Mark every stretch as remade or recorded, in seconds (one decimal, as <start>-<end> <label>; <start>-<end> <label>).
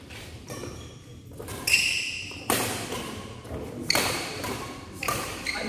0.0-1.1 remade; 1.1-4.1 recorded; 4.1-5.7 remade